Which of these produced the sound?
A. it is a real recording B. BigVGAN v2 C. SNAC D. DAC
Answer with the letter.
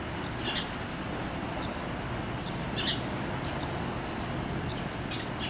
A